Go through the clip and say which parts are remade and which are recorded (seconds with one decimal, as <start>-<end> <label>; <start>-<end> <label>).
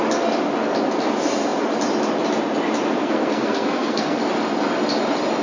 0.0-3.0 recorded; 3.0-4.2 remade; 4.2-5.4 recorded